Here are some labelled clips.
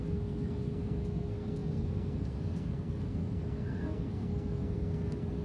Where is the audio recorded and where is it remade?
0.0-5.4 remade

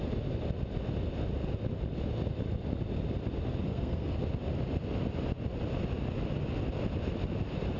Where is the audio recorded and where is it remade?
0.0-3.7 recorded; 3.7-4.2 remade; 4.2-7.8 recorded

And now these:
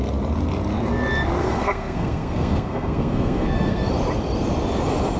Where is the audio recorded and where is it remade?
0.0-1.4 recorded; 1.4-3.8 remade; 3.8-5.2 recorded